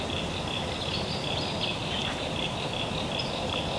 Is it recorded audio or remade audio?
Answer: recorded